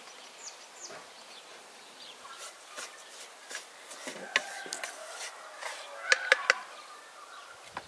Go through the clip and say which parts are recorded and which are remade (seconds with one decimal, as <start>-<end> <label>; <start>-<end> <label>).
0.0-1.5 recorded; 1.5-3.6 remade; 3.6-7.9 recorded